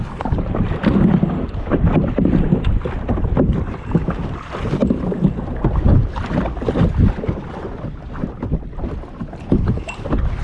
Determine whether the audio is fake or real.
real